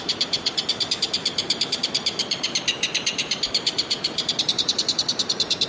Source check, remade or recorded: remade